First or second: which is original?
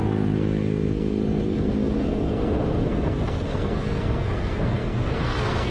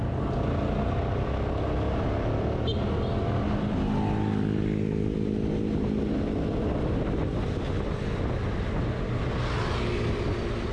second